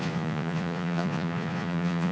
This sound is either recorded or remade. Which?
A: remade